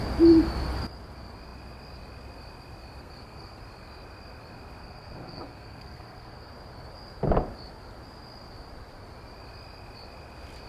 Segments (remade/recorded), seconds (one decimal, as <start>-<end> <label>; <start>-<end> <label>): 0.0-3.0 recorded; 3.0-3.6 remade; 3.6-4.8 recorded; 4.8-6.5 remade; 6.5-10.7 recorded